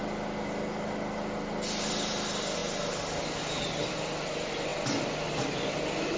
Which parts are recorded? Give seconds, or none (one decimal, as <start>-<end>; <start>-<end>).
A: 0.0-6.2